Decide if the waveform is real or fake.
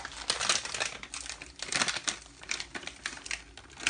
real